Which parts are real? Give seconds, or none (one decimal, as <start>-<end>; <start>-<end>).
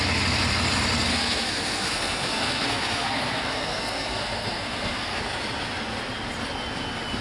0.0-1.1; 5.2-7.2